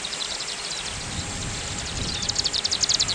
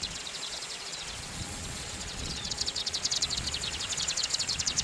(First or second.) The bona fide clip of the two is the first